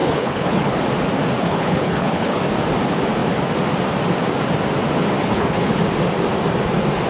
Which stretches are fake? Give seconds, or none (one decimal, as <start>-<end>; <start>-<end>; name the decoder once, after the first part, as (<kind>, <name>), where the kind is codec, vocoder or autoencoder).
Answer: 0.0-0.8 (codec, HILCodec); 1.4-2.4; 5.2-5.8